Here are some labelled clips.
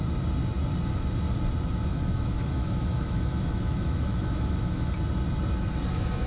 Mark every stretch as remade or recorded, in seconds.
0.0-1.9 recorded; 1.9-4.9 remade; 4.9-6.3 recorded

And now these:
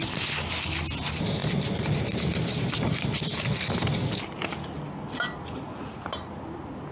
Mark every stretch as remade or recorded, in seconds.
0.0-6.9 recorded

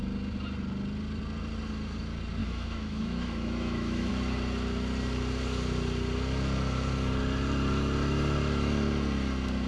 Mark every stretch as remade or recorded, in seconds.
0.0-2.4 recorded; 2.4-4.1 remade; 4.1-9.7 recorded

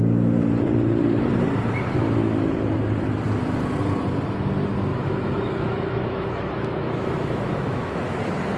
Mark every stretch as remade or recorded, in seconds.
0.0-4.9 recorded; 4.9-8.2 remade; 8.2-8.6 recorded